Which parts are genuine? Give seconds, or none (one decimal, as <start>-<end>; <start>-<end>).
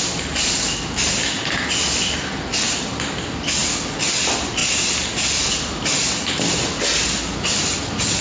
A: 0.0-8.2